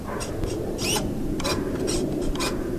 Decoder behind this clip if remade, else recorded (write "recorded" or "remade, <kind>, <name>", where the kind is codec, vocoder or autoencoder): remade, vocoder, BigVGAN v2